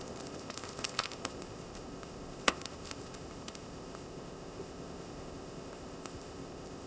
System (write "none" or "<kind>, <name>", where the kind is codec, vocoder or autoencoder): codec, ZipCodec